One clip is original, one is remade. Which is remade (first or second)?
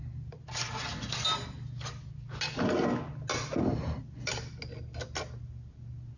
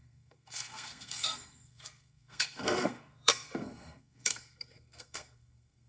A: second